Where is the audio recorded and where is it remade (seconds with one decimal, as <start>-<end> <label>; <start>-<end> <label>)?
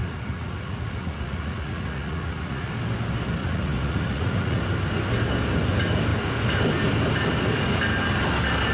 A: 0.0-2.7 remade; 2.7-3.4 recorded; 3.4-4.6 remade; 4.6-8.7 recorded